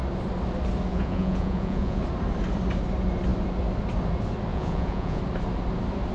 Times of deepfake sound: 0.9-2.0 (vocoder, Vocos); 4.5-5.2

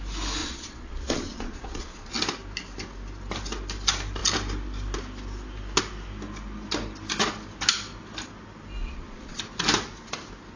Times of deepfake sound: 0.4-2.1 (vocoder, Vocos); 8.8-9.4

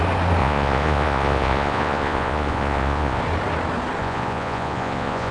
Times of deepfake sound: 0.4-3.2 (vocoder, Vocos); 4.0-5.3

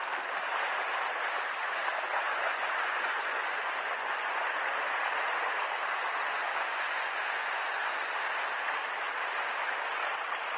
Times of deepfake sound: 2.3-4.6 (vocoder, Vocos); 6.0-8.2

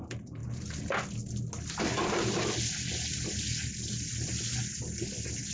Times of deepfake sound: none